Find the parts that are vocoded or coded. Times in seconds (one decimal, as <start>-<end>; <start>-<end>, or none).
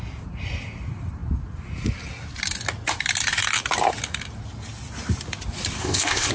5.8-6.3